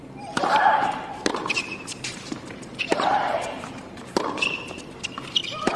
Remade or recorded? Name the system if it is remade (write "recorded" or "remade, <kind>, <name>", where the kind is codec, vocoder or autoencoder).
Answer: remade, vocoder, BigVGAN v2